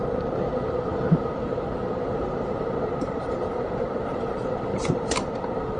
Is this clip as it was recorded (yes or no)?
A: no